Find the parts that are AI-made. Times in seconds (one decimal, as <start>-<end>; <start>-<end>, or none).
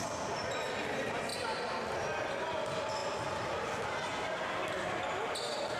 none